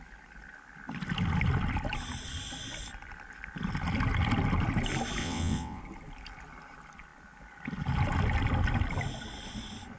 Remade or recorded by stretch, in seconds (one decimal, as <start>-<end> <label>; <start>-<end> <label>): 0.0-5.2 recorded; 5.2-5.8 remade; 5.8-10.0 recorded